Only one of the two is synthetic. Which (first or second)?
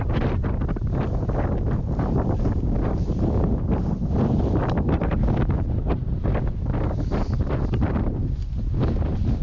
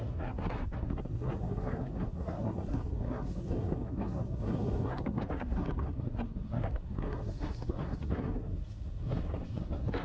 second